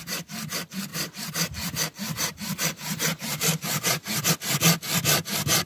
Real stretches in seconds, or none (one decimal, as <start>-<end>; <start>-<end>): 0.0-0.9; 4.3-5.6